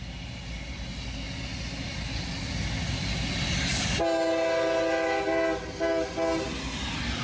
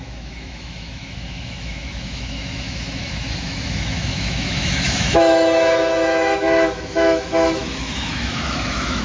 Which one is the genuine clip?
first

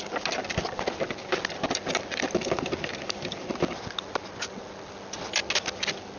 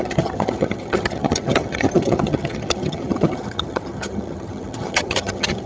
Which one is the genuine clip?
first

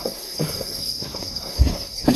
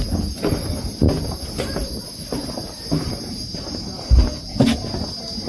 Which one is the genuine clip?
second